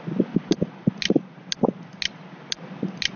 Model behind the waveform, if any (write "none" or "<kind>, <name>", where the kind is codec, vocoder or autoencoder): none